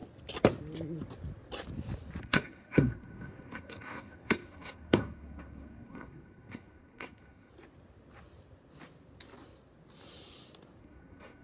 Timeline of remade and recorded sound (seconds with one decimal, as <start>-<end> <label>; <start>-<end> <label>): 0.0-2.2 recorded; 2.2-7.5 remade; 7.5-10.8 recorded; 10.8-11.4 remade